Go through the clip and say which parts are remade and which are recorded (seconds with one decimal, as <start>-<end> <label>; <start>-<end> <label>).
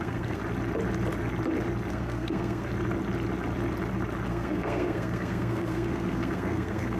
0.0-0.4 remade; 0.4-1.9 recorded; 1.9-2.7 remade; 2.7-4.3 recorded; 4.3-7.0 remade